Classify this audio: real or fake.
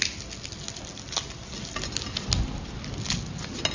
real